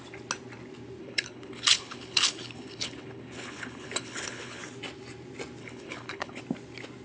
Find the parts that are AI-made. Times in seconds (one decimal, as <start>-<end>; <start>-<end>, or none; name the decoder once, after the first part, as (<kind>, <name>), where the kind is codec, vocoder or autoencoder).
1.0-4.6 (codec, HILCodec); 5.6-6.4